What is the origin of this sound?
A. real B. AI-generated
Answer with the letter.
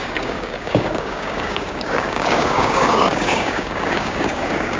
B